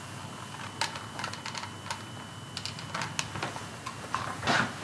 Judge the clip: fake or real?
real